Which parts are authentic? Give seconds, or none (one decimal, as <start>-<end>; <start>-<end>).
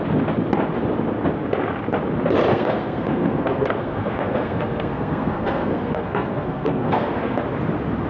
0.0-2.5; 7.4-8.1